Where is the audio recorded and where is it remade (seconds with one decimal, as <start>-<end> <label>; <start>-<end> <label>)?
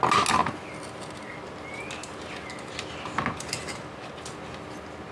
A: 0.0-5.1 recorded